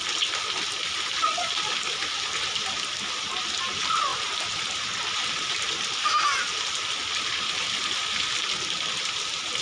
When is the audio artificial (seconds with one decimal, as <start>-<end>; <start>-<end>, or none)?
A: 4.1-6.6